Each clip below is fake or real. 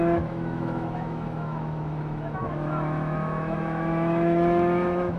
fake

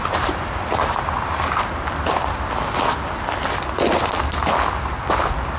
real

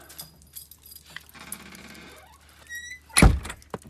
real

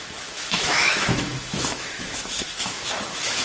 fake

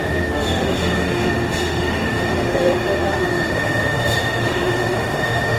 fake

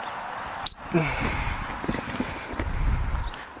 real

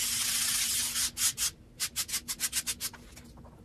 real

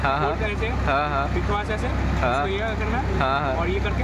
real